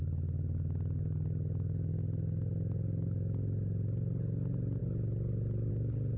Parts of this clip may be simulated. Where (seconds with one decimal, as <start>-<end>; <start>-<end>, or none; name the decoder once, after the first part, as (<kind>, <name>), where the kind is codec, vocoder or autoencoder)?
none